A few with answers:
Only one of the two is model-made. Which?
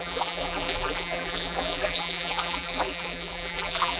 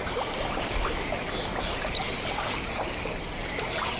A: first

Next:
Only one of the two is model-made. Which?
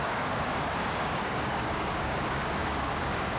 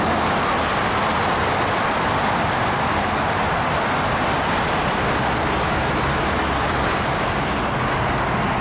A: first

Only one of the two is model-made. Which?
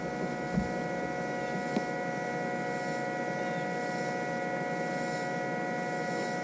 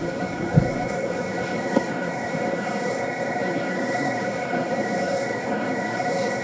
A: second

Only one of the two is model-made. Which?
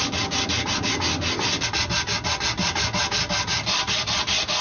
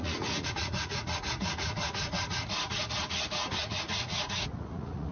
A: second